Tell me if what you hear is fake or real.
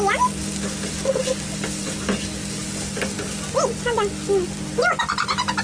real